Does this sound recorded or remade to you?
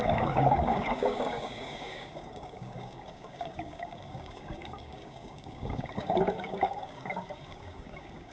remade